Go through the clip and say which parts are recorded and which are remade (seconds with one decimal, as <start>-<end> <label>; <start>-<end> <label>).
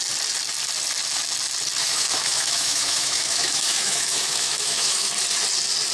0.0-1.8 recorded; 1.8-5.1 remade; 5.1-5.9 recorded